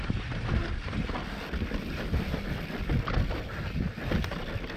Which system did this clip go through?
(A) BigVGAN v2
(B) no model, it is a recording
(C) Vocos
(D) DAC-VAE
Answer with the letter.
B